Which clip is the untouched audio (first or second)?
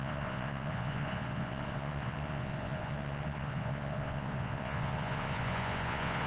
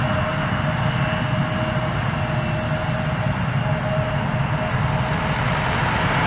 second